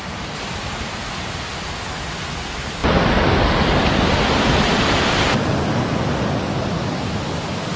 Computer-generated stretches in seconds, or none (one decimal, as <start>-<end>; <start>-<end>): none